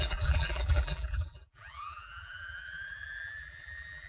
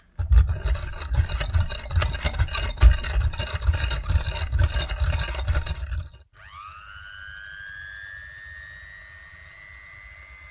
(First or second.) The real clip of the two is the second